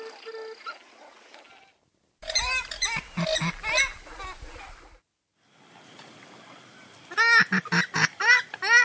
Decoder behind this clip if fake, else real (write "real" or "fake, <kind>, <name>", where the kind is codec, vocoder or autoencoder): real